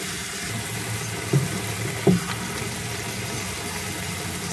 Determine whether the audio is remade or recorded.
recorded